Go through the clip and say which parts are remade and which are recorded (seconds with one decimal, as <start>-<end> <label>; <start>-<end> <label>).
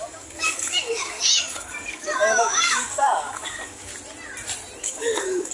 0.0-3.9 remade; 3.9-4.8 recorded; 4.8-5.5 remade